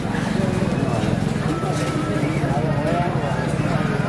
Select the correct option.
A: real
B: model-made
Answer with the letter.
A